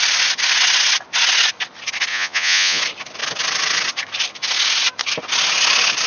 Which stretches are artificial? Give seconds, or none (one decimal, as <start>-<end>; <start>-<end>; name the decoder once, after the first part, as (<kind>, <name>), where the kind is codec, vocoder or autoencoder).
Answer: 2.1-2.8 (vocoder, Vocos)